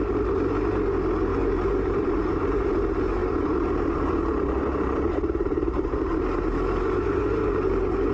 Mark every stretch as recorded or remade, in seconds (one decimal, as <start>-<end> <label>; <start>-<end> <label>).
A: 0.0-1.3 recorded; 1.3-2.7 remade; 2.7-3.2 recorded; 3.2-8.1 remade